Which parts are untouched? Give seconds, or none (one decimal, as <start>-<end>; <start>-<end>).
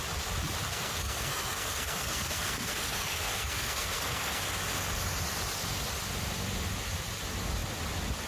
0.0-0.7; 4.4-8.3